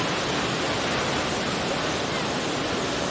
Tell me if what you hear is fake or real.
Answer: real